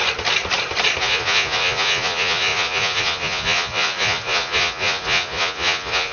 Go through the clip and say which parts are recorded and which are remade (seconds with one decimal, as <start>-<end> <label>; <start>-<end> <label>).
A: 0.0-1.0 recorded; 1.0-6.1 remade